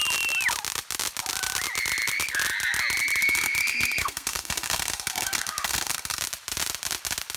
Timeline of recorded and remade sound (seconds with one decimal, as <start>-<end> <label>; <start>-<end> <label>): 0.0-3.2 recorded; 3.2-6.2 remade; 6.2-7.4 recorded